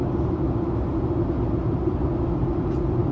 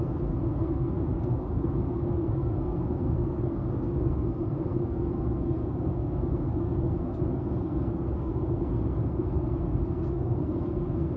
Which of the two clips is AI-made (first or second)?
second